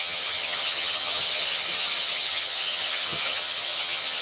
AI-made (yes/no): yes